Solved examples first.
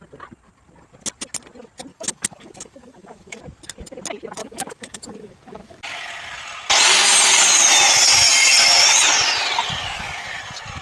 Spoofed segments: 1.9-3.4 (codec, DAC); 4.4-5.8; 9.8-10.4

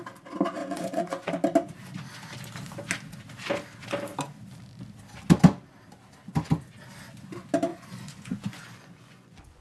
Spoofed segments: 0.6-1.3 (vocoder, Vocos); 7.7-9.6

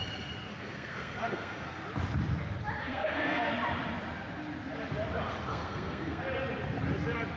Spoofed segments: 0.5-1.8 (codec, SNAC); 2.8-3.5; 5.5-6.2

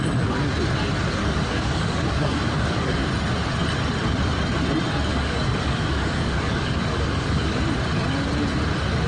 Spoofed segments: 1.2-3.0 (codec, DAC); 5.1-7.6

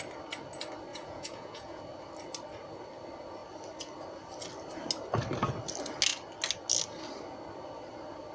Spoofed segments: 0.9-1.8 (vocoder, Vocos)